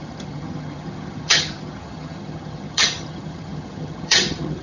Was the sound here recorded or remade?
remade